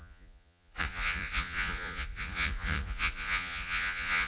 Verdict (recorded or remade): remade